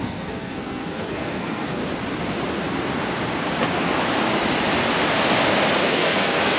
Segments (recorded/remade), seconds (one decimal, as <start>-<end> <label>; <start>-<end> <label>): 0.0-1.8 remade; 1.8-5.8 recorded; 5.8-6.6 remade